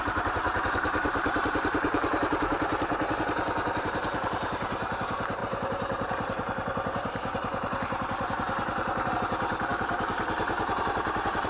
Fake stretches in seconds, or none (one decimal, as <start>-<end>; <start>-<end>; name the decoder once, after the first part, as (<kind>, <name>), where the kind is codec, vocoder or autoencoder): 0.0-2.7 (vocoder, BigVGAN v2); 3.8-11.5